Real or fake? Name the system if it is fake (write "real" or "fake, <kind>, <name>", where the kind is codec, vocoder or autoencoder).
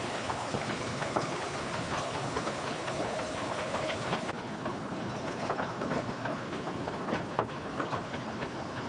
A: fake, codec, HILCodec